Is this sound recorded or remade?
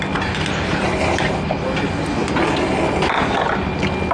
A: recorded